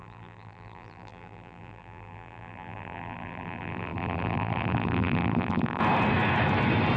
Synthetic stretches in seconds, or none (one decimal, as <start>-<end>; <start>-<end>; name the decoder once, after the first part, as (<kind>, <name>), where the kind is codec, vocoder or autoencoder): 0.0-5.8 (vocoder, BigVGAN v2)